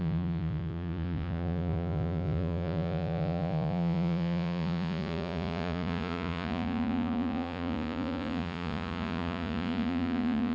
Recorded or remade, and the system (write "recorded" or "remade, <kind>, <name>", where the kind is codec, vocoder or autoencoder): remade, vocoder, Vocos